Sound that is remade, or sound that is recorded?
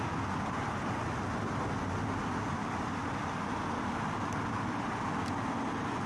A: recorded